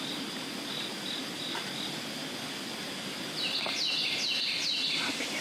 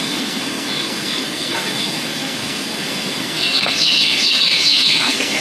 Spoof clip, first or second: second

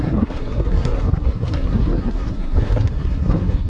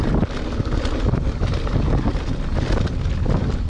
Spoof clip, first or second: first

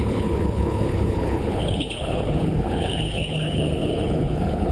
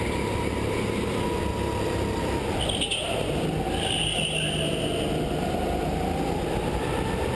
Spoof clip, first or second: first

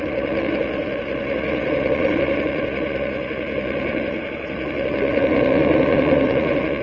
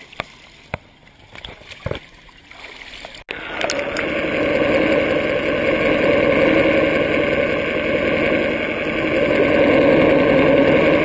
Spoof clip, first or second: first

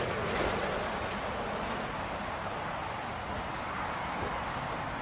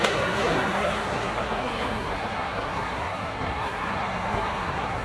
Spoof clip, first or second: second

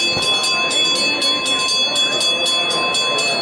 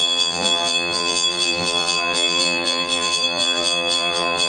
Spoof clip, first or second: second